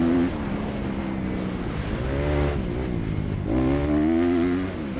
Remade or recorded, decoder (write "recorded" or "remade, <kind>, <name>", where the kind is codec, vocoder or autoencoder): recorded